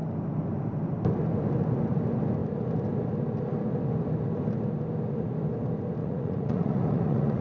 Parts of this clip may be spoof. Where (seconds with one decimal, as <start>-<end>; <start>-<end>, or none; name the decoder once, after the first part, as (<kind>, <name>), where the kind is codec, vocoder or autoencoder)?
6.0-7.4 (vocoder, Vocos)